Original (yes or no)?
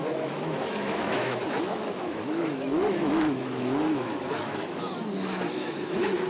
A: no